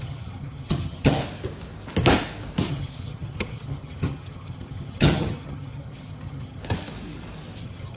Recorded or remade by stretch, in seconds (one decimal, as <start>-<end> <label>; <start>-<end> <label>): 0.0-1.2 remade; 1.2-2.7 recorded; 2.7-6.6 remade; 6.6-7.6 recorded; 7.6-8.0 remade